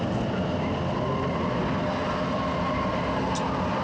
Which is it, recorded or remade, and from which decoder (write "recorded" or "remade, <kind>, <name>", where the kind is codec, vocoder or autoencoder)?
recorded